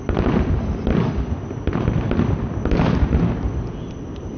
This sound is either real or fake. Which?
real